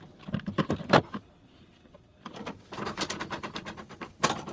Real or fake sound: fake